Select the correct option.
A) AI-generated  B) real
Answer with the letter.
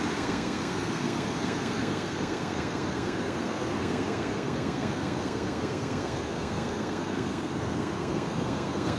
A